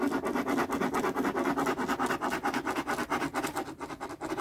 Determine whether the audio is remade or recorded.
recorded